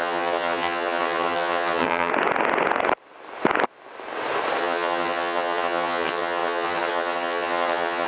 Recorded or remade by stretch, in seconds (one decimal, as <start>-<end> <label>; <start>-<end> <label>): 0.0-2.1 remade; 2.1-4.6 recorded; 4.6-8.1 remade